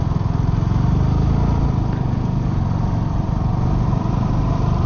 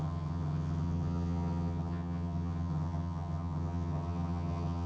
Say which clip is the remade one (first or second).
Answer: second